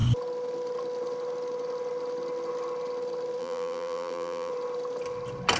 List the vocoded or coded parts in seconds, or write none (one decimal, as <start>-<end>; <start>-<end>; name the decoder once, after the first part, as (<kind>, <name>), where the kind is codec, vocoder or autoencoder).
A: 3.4-4.5 (vocoder, BigVGAN v2)